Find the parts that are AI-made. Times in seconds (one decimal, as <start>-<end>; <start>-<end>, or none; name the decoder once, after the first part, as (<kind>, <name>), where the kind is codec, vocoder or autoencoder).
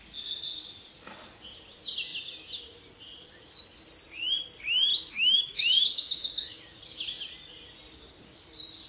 4.9-6.6 (autoencoder, DAC-VAE)